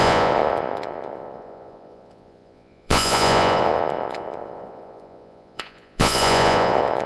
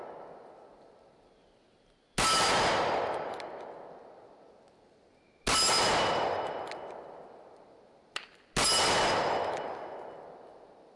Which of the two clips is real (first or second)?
second